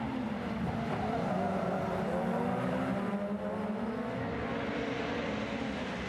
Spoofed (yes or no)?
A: no